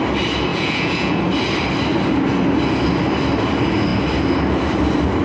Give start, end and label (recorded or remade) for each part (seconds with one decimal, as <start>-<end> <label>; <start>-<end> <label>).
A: 0.0-0.5 recorded; 0.5-1.2 remade; 1.2-5.2 recorded